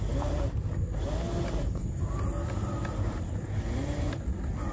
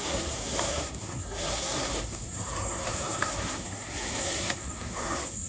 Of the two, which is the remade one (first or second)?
second